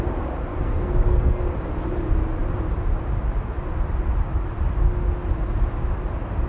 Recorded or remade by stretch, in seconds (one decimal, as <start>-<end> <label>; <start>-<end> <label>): 0.0-0.5 recorded; 0.5-1.4 remade; 1.4-6.5 recorded